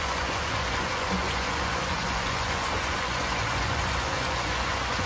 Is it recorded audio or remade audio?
remade